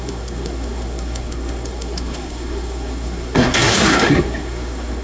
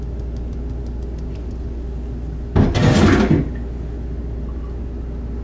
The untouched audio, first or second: second